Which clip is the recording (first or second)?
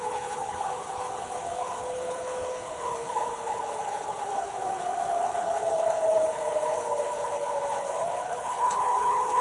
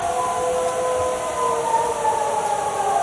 second